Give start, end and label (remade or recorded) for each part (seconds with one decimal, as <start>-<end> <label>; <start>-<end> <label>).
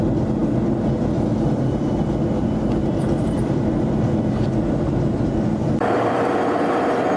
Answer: 0.0-2.8 recorded; 2.8-3.7 remade; 3.7-5.6 recorded; 5.6-6.3 remade; 6.3-7.2 recorded